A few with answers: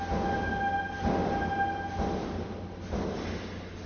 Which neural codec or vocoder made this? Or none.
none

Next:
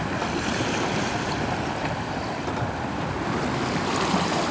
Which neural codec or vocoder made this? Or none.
none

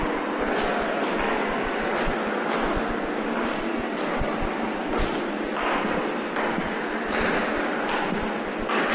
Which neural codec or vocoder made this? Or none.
vocoder, BigVGAN v2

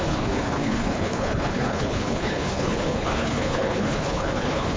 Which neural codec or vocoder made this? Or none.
codec, HILCodec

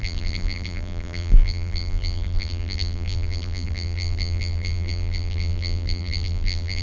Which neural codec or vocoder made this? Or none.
vocoder, BigVGAN v2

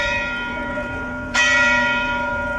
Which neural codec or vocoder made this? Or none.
vocoder, BigVGAN v2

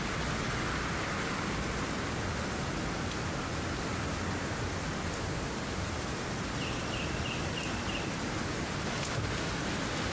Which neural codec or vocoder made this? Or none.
none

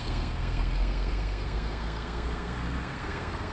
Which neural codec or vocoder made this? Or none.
codec, SNAC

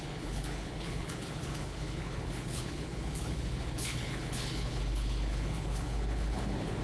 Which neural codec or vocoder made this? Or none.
codec, HILCodec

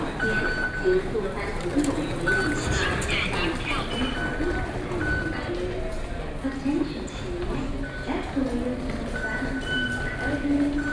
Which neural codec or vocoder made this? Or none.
none